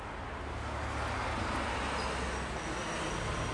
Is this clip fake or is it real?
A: real